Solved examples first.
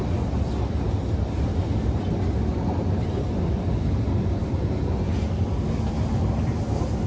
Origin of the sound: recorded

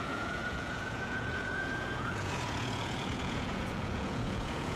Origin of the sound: remade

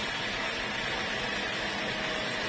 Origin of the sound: recorded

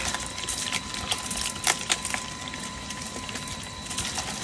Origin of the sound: recorded